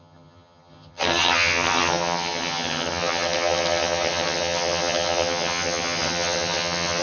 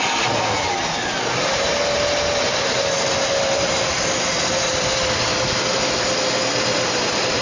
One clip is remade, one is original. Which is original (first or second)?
second